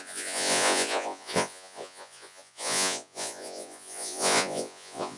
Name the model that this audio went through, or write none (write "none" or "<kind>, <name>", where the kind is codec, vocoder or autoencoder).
vocoder, Vocos